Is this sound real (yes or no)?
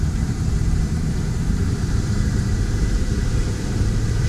no